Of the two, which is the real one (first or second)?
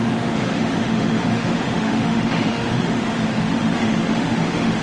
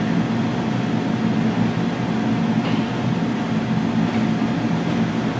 second